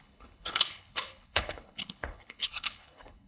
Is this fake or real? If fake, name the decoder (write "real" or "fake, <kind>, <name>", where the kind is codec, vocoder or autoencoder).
fake, codec, HILCodec